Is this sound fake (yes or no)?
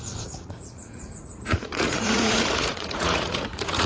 yes